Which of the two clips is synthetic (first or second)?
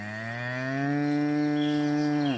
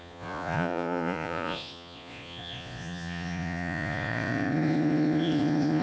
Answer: second